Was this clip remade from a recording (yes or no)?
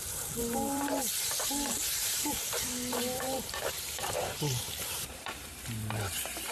yes